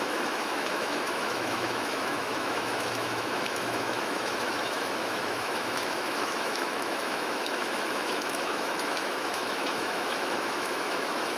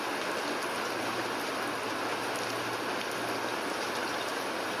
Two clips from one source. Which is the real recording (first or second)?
second